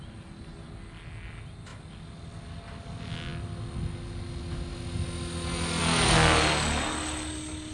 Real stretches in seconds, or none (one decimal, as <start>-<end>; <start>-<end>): 0.0-7.7